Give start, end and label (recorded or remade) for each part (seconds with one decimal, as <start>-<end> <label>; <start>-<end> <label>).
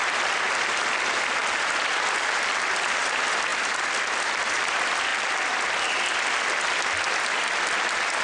0.0-3.5 recorded; 3.5-4.6 remade; 4.6-5.1 recorded; 5.1-6.0 remade; 6.0-8.2 recorded